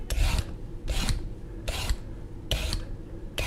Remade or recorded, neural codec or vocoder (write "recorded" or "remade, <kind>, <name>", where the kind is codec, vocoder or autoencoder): remade, vocoder, BigVGAN v2